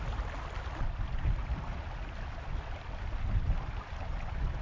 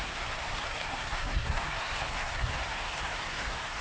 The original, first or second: first